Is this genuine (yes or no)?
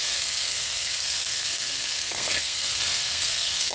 no